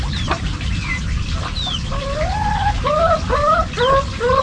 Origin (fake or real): real